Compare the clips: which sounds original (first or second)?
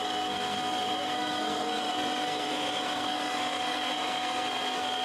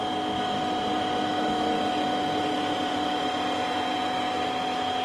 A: second